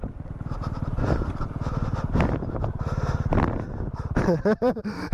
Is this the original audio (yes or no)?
no